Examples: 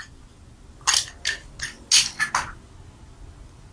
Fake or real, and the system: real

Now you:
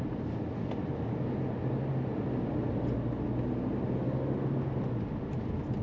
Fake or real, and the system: real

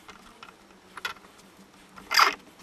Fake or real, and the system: real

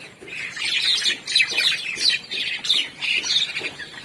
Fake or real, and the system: fake, vocoder, BigVGAN v2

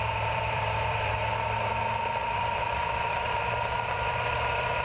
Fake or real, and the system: fake, vocoder, BigVGAN v2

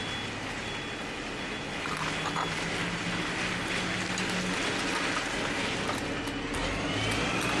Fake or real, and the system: real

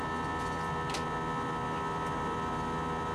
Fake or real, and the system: real